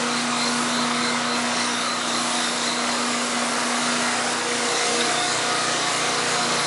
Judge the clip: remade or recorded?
remade